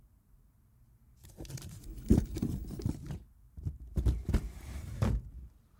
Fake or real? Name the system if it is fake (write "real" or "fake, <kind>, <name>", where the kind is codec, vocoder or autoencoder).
fake, vocoder, BigVGAN v2